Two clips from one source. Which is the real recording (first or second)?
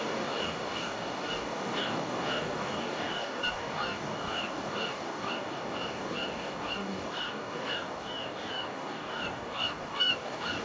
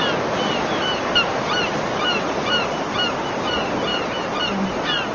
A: second